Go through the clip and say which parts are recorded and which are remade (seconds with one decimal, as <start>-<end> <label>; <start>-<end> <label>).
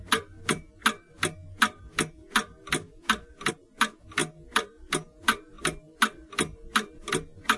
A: 0.0-7.6 recorded